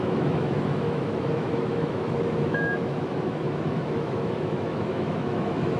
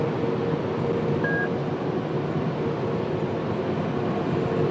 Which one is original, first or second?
second